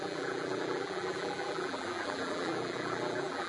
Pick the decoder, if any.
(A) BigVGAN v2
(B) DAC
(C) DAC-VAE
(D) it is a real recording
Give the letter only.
A